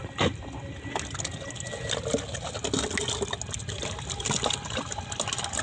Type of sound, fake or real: real